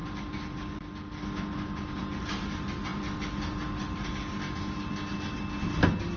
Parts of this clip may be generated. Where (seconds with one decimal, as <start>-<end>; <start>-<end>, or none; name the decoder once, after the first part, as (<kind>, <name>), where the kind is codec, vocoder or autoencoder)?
none